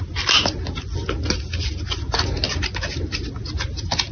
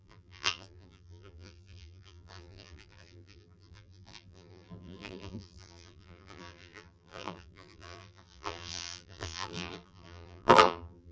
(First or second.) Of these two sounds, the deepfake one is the second